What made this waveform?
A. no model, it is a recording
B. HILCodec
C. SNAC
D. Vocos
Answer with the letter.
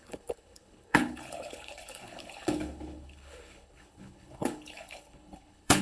B